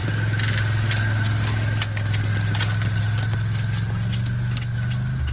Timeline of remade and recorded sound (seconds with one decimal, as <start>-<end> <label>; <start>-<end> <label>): 0.0-5.3 recorded